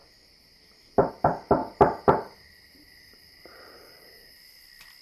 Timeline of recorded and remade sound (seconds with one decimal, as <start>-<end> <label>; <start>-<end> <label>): 0.0-1.6 recorded; 1.6-4.6 remade; 4.6-5.0 recorded

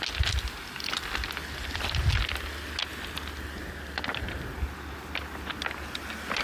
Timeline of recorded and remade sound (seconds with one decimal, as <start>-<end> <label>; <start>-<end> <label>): 0.0-6.4 recorded

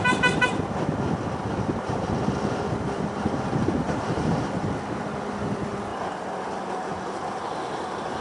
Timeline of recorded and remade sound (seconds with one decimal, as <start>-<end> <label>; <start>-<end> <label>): 0.0-5.9 remade; 5.9-6.7 recorded; 6.7-8.2 remade

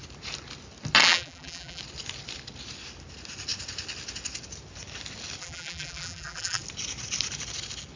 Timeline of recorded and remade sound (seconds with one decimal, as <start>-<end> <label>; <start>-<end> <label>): 0.0-1.0 recorded; 1.0-1.8 remade; 1.8-5.4 recorded; 5.4-6.6 remade; 6.6-8.0 recorded